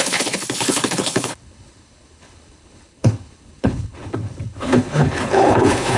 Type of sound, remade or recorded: remade